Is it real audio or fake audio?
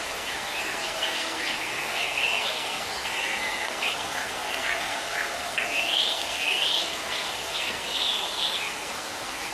fake